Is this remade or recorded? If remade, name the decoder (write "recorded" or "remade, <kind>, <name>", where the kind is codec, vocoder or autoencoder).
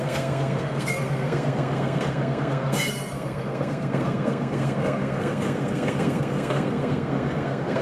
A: remade, codec, SNAC